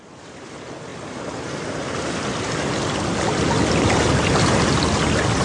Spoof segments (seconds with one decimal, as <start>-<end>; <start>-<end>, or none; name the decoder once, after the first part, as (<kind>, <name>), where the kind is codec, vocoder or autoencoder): none